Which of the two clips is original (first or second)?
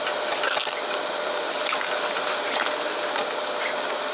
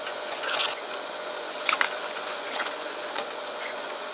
first